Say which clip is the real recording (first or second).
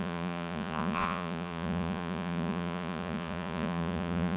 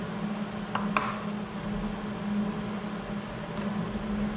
second